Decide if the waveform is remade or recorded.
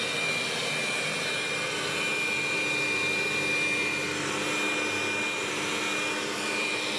recorded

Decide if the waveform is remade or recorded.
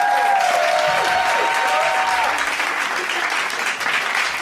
recorded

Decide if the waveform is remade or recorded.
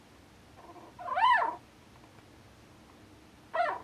recorded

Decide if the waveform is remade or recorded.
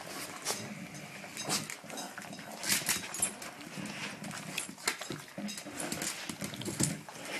recorded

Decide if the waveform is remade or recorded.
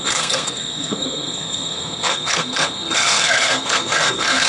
remade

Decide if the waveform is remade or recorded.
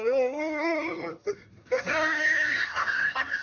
remade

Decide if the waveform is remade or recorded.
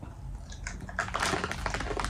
recorded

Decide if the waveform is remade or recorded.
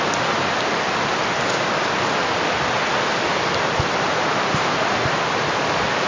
recorded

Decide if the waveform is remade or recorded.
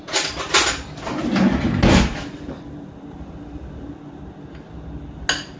recorded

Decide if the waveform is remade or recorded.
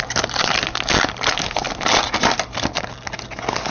recorded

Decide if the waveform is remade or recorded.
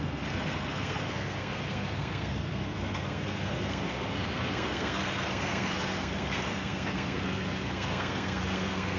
remade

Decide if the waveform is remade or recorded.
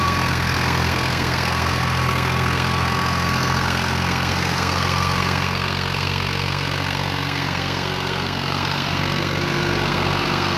remade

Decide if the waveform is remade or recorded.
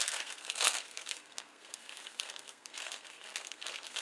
remade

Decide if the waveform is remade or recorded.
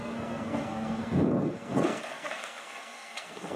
remade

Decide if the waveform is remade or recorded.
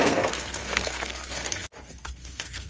remade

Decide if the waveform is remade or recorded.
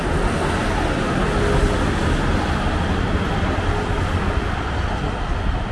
recorded